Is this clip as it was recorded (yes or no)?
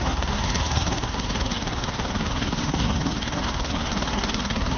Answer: no